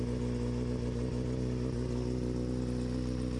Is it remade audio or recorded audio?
recorded